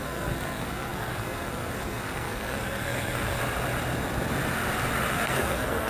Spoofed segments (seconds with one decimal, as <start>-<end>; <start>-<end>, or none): 0.0-3.4; 5.1-5.9